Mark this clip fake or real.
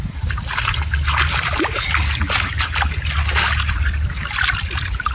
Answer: real